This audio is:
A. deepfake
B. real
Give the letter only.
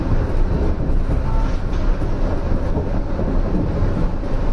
B